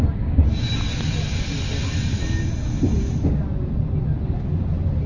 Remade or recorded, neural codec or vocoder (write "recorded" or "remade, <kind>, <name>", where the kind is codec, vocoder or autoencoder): recorded